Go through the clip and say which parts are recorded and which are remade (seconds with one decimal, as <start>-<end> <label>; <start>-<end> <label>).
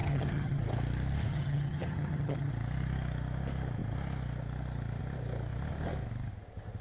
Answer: 0.0-0.6 remade; 0.6-1.3 recorded; 1.3-2.5 remade; 2.5-6.8 recorded